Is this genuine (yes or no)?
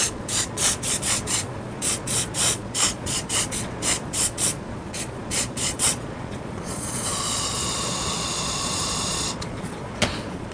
no